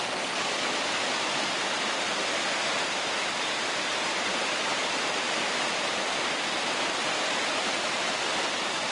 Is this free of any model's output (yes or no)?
no